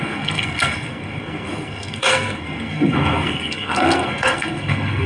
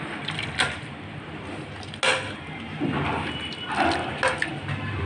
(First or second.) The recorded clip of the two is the second